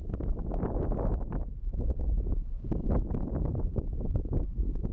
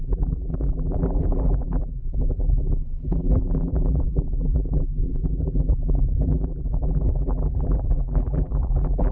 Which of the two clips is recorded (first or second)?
first